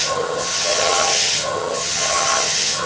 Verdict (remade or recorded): remade